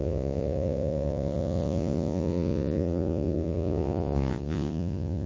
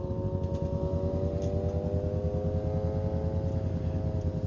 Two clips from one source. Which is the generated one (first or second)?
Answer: first